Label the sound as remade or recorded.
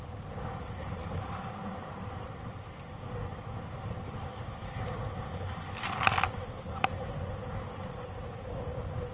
recorded